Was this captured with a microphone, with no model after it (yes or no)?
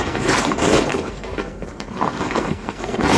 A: no